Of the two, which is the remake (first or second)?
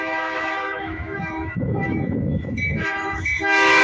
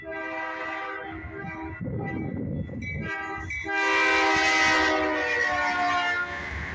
first